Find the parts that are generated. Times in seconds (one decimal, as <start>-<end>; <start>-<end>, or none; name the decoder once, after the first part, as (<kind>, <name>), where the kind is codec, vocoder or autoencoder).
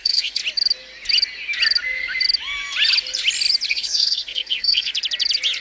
0.0-0.4 (codec, SNAC); 3.7-4.9